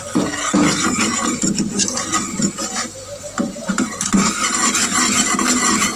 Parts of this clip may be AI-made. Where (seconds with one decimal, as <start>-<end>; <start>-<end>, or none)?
none